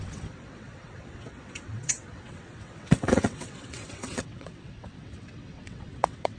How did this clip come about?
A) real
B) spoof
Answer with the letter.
B